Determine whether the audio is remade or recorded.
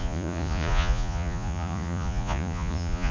remade